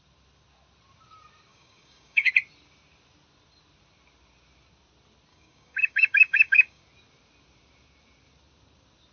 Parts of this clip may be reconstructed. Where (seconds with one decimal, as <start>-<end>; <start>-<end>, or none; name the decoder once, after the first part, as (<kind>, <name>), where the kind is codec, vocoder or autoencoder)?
1.5-2.3 (codec, DAC); 5.3-6.8